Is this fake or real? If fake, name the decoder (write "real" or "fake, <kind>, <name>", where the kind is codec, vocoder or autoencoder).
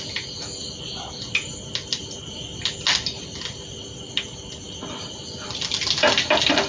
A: real